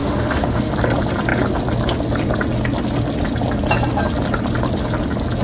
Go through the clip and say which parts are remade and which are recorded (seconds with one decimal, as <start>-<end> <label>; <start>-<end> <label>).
0.0-0.7 remade; 0.7-5.4 recorded